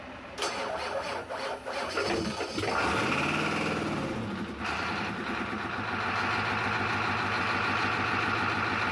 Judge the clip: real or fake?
real